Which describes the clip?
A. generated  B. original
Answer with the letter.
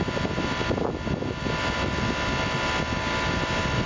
B